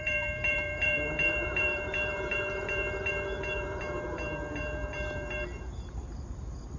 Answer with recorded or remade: remade